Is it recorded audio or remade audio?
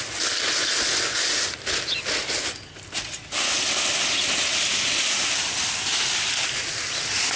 recorded